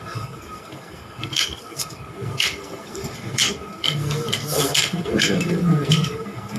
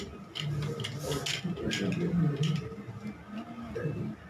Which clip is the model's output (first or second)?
first